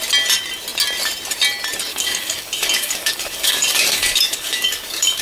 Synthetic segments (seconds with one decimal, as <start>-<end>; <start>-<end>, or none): 1.9-5.2